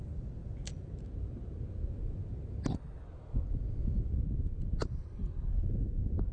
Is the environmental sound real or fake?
real